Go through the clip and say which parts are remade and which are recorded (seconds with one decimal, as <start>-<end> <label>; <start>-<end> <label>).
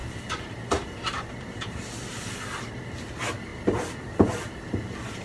0.0-5.2 remade